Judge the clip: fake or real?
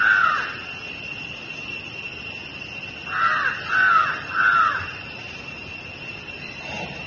real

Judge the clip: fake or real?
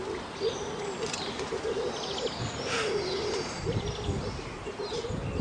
real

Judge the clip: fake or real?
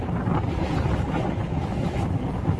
real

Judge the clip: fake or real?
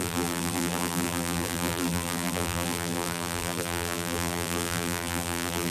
fake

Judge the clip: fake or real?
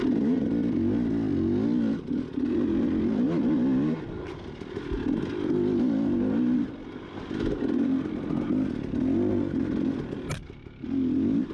real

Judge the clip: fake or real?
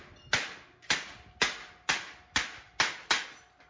real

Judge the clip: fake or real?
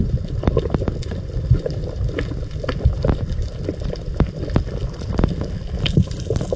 fake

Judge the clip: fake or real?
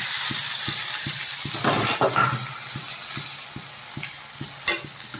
real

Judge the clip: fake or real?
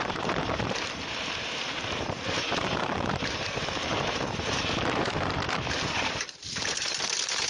fake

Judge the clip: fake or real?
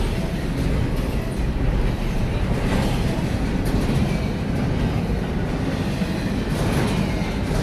real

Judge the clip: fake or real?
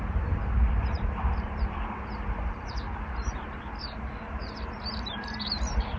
fake